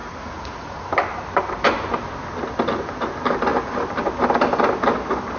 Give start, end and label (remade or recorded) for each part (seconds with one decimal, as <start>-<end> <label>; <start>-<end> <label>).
0.0-0.9 remade; 0.9-5.4 recorded